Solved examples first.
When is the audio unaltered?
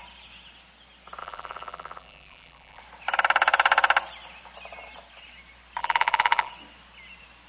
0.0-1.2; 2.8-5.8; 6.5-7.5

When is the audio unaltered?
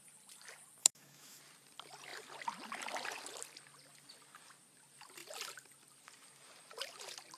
0.0-0.8; 1.4-7.4